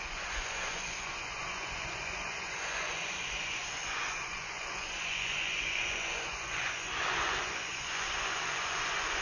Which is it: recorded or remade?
remade